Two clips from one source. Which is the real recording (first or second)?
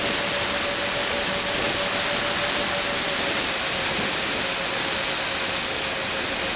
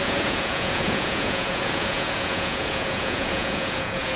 first